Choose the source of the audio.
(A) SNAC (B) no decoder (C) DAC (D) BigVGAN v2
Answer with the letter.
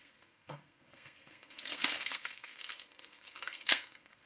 A